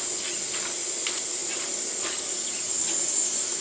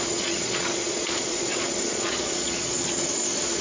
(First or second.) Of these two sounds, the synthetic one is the second